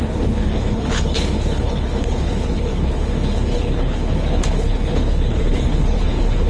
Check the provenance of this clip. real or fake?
fake